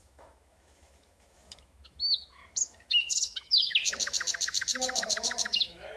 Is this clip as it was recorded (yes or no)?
no